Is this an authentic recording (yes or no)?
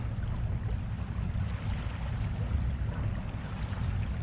yes